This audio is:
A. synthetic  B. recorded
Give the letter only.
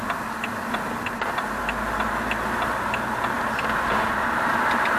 B